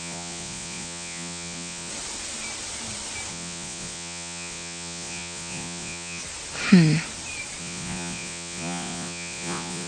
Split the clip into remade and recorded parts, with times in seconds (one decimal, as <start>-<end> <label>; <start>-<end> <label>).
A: 0.0-1.9 remade; 1.9-3.3 recorded; 3.3-6.2 remade; 6.2-7.6 recorded; 7.6-9.9 remade